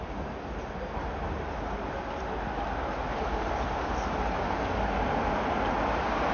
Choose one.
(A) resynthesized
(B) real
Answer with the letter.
B